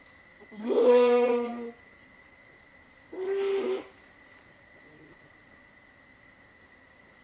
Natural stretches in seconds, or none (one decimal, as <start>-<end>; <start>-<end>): 1.5-2.1